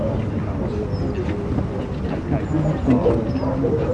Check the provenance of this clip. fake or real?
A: real